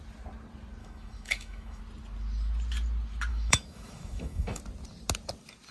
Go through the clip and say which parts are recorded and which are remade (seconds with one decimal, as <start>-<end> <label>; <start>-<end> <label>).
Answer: 0.0-0.8 recorded; 0.8-1.8 remade; 1.8-3.3 recorded; 3.3-4.6 remade; 4.6-5.7 recorded